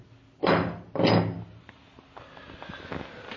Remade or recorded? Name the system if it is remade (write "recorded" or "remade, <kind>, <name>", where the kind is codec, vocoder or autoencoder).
recorded